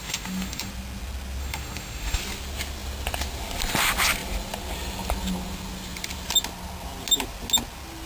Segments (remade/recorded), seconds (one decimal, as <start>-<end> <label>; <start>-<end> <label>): 0.0-0.7 remade; 0.7-1.4 recorded; 1.4-2.2 remade; 2.2-8.1 recorded